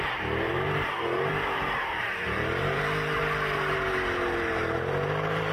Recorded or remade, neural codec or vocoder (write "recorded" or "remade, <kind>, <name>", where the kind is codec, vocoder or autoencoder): remade, vocoder, BigVGAN v2